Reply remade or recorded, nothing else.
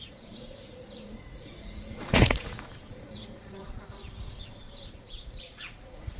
remade